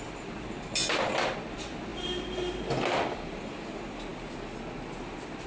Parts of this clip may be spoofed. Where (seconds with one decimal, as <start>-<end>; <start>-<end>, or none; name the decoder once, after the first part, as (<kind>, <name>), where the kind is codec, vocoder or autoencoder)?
none